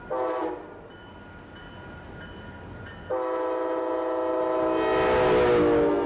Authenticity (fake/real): real